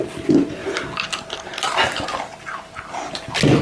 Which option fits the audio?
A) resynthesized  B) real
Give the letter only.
B